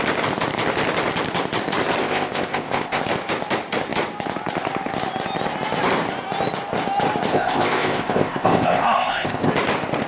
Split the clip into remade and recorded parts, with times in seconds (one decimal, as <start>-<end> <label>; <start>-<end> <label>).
0.0-2.0 recorded; 2.0-3.0 remade; 3.0-7.3 recorded; 7.3-9.5 remade; 9.5-10.1 recorded